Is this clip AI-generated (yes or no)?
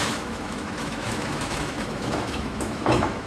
yes